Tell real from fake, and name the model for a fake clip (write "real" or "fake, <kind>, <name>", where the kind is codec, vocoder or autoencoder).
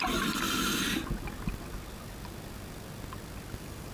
real